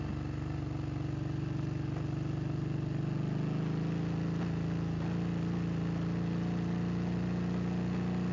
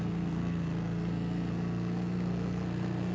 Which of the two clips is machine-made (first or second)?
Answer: second